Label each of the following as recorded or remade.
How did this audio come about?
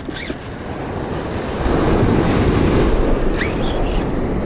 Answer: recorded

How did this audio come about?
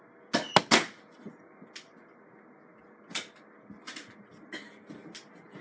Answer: recorded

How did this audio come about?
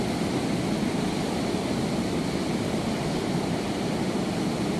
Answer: recorded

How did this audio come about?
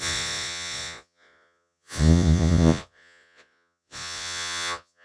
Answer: remade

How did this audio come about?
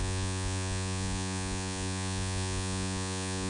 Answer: remade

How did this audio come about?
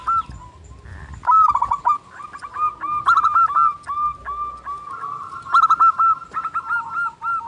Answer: recorded